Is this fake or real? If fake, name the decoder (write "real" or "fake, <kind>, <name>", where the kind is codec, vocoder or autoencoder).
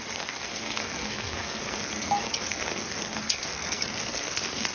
fake, codec, SNAC